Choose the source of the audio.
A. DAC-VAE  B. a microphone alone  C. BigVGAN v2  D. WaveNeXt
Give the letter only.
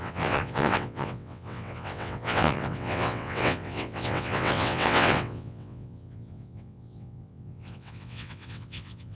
D